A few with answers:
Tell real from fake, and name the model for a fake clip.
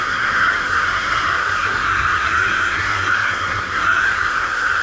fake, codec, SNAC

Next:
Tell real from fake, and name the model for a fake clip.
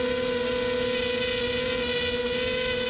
real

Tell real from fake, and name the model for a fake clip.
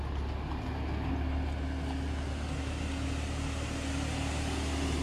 real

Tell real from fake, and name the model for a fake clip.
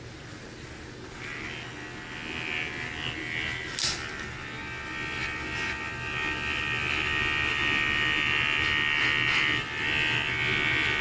real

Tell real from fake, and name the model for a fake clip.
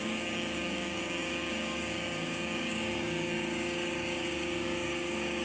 fake, codec, DAC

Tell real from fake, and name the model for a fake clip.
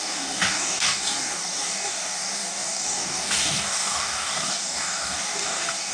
fake, codec, DAC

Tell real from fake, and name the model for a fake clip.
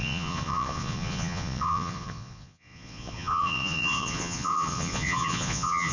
fake, vocoder, Vocos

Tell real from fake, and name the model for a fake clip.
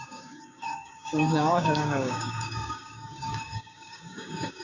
fake, codec, DAC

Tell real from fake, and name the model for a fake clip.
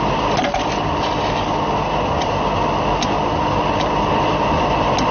real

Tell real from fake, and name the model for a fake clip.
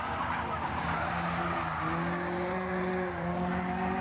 real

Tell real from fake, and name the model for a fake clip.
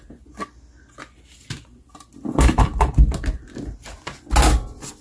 real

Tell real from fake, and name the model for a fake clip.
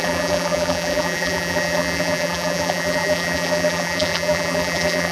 fake, vocoder, BigVGAN v2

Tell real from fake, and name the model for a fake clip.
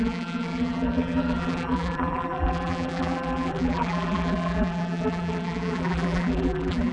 fake, vocoder, BigVGAN v2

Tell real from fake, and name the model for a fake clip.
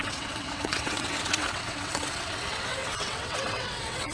fake, vocoder, WaveNeXt